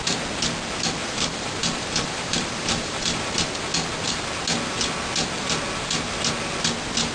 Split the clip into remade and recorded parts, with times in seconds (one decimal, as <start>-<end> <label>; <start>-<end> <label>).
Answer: 0.0-1.0 recorded; 1.0-3.5 remade; 3.5-7.1 recorded